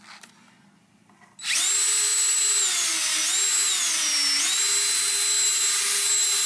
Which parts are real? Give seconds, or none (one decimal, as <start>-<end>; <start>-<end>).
0.0-6.5